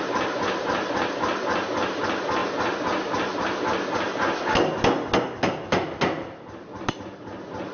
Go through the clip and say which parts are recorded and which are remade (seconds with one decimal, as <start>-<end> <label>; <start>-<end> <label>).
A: 0.0-7.7 recorded